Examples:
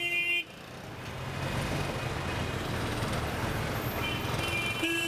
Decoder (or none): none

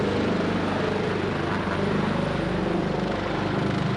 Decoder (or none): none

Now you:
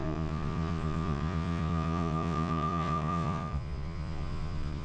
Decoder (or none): vocoder, Vocos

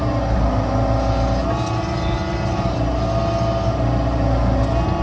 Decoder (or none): none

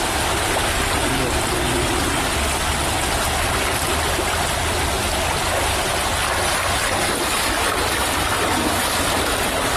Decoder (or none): none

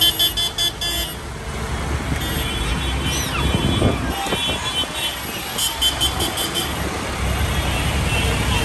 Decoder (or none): none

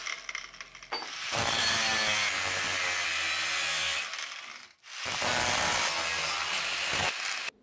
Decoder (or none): none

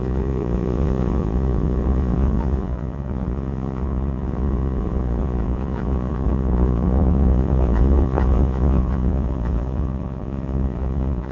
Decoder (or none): vocoder, Vocos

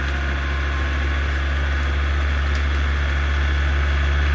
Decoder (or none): none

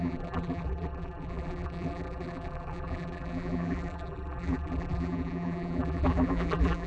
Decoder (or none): vocoder, BigVGAN v2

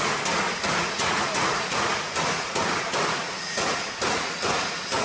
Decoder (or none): vocoder, Vocos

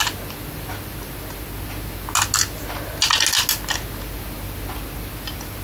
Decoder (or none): none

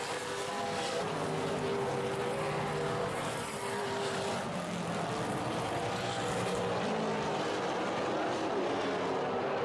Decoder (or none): none